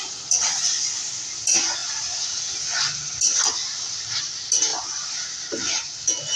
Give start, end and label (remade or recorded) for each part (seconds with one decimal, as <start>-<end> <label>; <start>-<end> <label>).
0.0-6.4 recorded

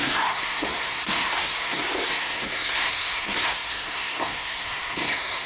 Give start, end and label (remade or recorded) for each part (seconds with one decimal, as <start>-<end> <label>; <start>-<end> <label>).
0.0-5.5 remade

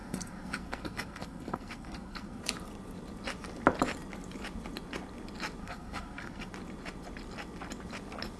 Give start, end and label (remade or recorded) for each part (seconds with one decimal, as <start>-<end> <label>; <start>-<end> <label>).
0.0-2.4 remade; 2.4-5.6 recorded; 5.6-6.5 remade; 6.5-8.4 recorded

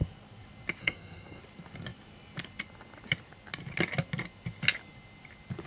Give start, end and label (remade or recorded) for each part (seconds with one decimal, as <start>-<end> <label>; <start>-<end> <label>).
0.0-0.8 recorded; 0.8-1.4 remade; 1.4-5.7 recorded

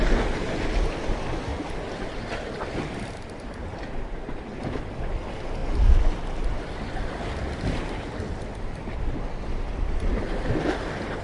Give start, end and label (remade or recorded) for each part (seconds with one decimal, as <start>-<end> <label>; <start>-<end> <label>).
0.0-11.2 recorded